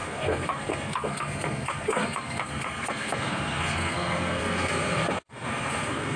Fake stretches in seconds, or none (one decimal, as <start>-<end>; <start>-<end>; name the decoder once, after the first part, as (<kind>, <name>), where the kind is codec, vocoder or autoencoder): 0.0-6.2 (codec, SNAC)